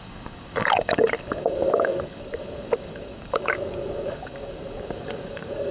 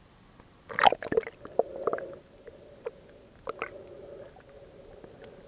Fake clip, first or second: first